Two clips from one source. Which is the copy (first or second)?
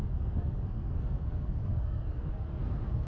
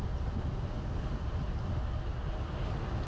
first